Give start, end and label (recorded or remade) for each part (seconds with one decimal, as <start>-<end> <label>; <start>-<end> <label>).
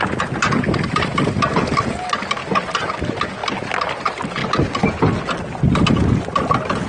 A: 0.0-6.9 recorded